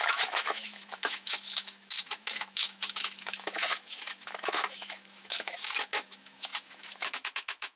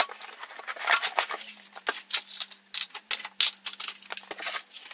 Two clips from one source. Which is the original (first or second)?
second